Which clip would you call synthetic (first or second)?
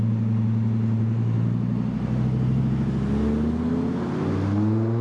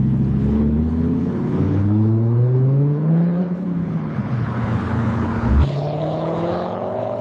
second